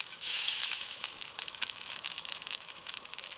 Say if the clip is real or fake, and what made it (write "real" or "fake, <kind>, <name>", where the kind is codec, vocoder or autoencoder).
fake, autoencoder, DAC-VAE